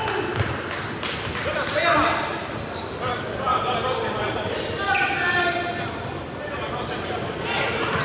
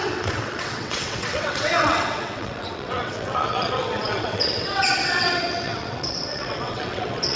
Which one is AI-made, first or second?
second